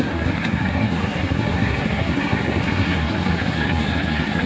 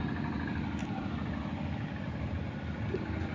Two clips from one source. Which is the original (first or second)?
second